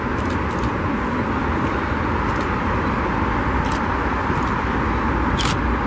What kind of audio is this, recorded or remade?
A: recorded